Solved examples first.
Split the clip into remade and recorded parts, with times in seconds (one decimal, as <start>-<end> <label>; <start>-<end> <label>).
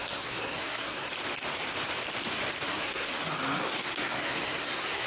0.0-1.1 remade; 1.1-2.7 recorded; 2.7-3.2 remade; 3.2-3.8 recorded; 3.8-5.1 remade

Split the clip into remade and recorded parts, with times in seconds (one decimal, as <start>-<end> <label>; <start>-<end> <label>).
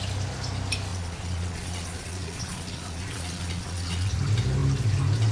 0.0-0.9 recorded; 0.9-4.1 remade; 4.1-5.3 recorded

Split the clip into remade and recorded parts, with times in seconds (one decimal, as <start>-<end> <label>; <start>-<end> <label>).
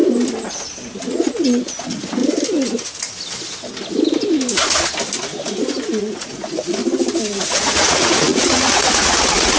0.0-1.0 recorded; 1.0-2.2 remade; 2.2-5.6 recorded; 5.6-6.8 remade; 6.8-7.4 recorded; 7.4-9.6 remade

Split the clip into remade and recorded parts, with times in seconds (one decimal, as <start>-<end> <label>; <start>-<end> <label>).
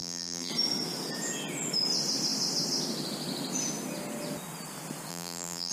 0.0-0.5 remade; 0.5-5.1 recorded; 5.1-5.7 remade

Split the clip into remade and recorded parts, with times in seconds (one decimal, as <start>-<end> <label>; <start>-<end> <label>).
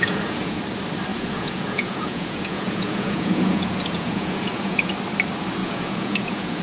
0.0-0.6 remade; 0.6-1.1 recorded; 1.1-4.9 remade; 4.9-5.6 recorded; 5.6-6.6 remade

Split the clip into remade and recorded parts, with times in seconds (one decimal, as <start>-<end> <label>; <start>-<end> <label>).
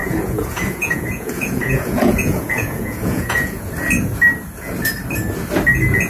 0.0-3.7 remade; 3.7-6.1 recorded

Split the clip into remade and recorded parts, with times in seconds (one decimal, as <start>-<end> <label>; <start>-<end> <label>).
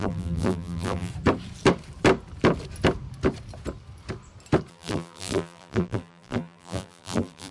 0.0-1.1 remade; 1.1-4.7 recorded; 4.7-7.5 remade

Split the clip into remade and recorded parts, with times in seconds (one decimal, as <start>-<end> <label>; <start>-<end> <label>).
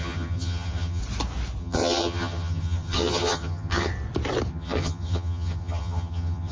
0.0-1.0 remade; 1.0-1.6 recorded; 1.6-3.9 remade; 3.9-4.5 recorded; 4.5-6.5 remade